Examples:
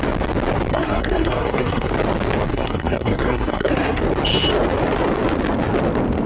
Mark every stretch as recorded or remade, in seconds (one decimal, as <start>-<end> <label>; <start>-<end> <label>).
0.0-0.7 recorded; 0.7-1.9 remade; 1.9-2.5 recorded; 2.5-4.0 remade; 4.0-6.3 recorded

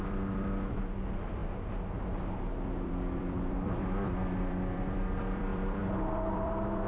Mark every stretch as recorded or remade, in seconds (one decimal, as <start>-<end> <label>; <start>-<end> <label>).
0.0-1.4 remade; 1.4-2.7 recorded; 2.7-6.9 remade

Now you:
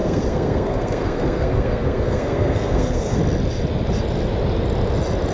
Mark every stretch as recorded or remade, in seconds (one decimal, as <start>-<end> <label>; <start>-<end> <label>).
0.0-3.2 remade; 3.2-5.3 recorded

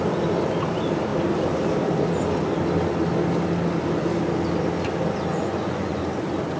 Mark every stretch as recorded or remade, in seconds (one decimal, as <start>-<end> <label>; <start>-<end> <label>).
0.0-5.3 recorded; 5.3-6.0 remade; 6.0-6.6 recorded